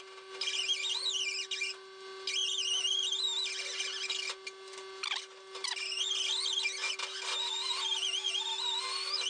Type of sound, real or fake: real